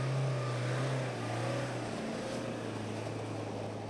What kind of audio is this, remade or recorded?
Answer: recorded